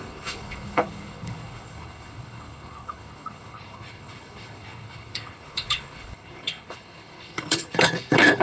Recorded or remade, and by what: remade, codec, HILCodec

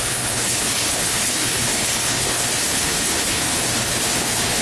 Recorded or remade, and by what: remade, codec, HILCodec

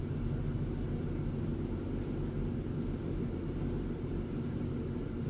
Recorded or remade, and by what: recorded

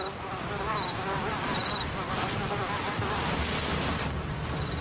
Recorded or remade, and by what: recorded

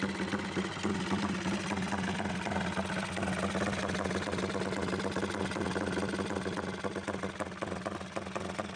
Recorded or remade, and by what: recorded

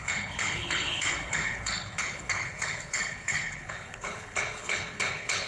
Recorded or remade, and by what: remade, codec, HILCodec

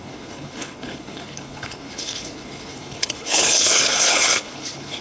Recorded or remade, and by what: remade, codec, HILCodec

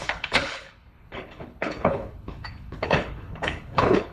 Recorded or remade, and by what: remade, codec, HILCodec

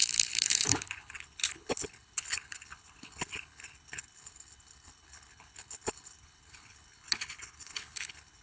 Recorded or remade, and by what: remade, codec, HILCodec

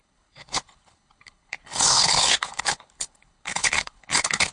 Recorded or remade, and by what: remade, codec, HILCodec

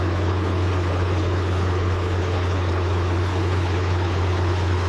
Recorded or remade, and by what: remade, codec, HILCodec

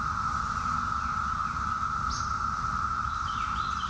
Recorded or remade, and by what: recorded